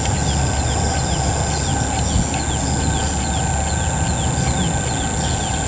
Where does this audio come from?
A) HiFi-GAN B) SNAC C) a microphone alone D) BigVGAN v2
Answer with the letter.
C